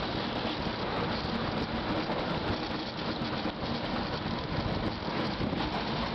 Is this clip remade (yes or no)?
no